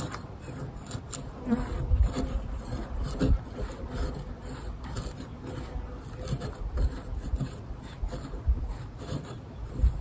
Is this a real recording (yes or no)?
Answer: yes